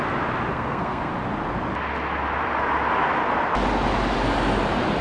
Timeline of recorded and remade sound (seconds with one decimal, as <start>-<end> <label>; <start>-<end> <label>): 0.0-0.5 recorded; 0.5-1.1 remade; 1.1-5.0 recorded